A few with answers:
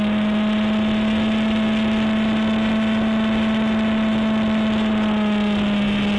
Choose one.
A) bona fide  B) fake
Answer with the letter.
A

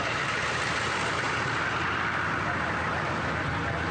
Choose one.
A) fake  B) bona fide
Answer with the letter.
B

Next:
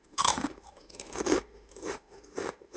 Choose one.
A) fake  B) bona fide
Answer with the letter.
A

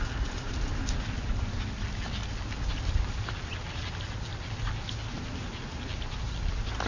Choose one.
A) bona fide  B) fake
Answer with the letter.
A